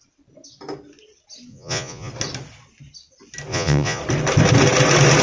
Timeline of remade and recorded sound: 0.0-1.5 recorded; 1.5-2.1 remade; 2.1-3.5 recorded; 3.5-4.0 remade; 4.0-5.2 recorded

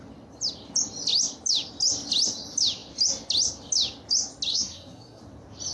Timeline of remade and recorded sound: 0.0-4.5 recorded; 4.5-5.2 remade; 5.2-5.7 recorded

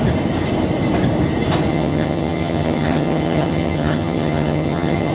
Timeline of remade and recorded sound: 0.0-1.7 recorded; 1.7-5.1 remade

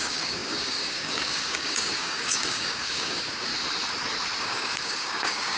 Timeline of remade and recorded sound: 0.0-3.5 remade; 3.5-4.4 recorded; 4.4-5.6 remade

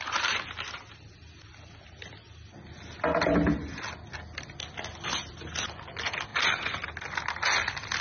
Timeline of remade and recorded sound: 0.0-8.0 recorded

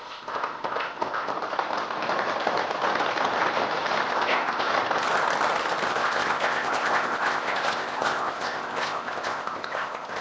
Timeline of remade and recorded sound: 0.0-1.3 remade; 1.3-4.1 recorded; 4.1-4.7 remade; 4.7-5.9 recorded; 5.9-10.2 remade

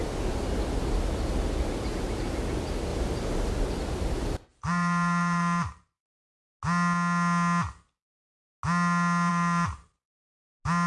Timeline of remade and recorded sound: 0.0-2.9 recorded; 2.9-3.5 remade; 3.5-4.5 recorded; 4.5-6.3 remade; 6.3-9.3 recorded; 9.3-10.2 remade; 10.2-10.9 recorded